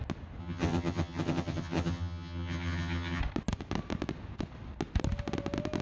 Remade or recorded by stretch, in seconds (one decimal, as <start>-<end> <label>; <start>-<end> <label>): 0.0-0.4 recorded; 0.4-3.2 remade; 3.2-5.8 recorded